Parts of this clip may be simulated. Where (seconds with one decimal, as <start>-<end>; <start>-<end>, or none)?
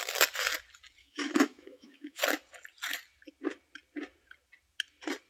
1.0-2.2